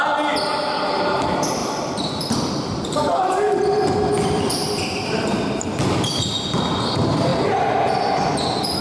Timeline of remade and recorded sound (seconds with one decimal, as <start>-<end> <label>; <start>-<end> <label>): 0.0-1.6 recorded; 1.6-6.0 remade; 6.0-8.8 recorded